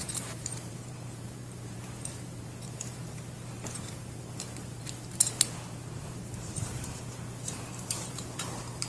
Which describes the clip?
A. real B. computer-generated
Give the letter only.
B